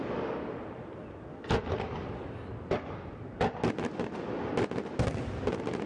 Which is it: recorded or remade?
recorded